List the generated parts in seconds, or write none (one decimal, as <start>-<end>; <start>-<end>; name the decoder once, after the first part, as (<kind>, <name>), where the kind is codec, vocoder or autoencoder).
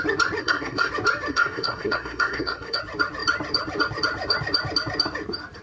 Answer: 0.4-0.9 (codec, SNAC); 1.3-2.8